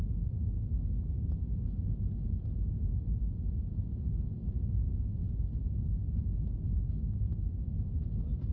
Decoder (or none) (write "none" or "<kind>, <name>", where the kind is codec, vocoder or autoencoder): none